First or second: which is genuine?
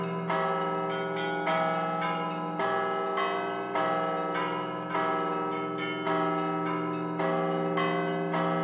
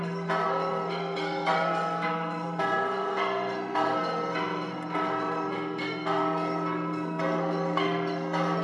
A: first